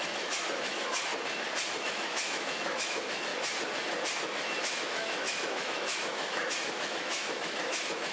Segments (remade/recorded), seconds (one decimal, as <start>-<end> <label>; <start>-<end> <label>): 0.0-1.1 remade; 1.1-1.8 recorded; 1.8-3.3 remade; 3.3-4.6 recorded; 4.6-8.1 remade